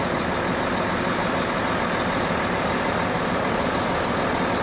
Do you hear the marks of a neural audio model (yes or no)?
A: no